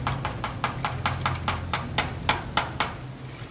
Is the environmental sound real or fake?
real